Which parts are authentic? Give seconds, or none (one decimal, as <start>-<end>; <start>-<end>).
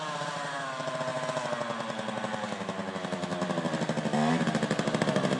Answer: 0.0-5.4